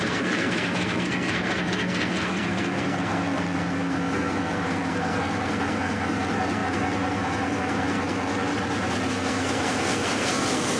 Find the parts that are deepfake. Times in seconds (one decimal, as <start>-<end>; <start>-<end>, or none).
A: 0.0-8.5; 9.1-10.8